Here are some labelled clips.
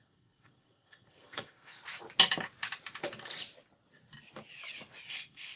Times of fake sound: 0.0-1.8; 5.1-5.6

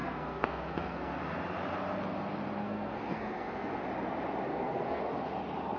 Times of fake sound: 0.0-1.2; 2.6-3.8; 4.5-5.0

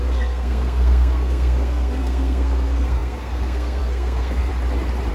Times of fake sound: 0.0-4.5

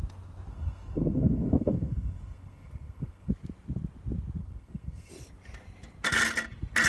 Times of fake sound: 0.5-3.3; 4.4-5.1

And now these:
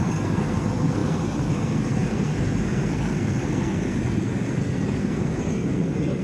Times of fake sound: 0.0-6.2

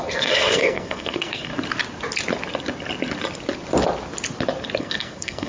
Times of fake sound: 0.0-1.5; 4.8-5.5